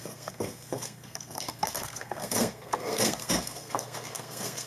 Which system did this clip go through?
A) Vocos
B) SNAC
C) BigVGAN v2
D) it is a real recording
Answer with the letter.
B